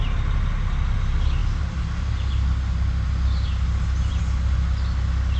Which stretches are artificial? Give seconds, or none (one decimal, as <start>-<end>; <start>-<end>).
none